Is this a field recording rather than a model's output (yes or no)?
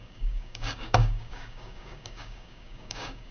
no